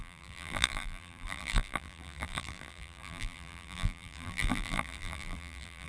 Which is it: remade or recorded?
remade